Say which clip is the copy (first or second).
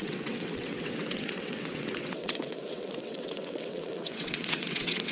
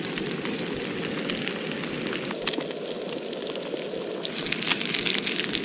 first